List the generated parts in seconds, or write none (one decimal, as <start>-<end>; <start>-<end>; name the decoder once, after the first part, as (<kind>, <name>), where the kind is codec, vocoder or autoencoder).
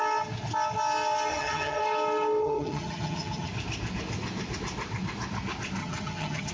1.3-1.8 (vocoder, HiFi-GAN); 2.4-3.5; 5.8-6.5